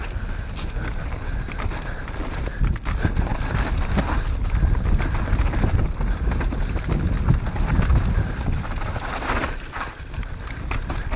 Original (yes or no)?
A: yes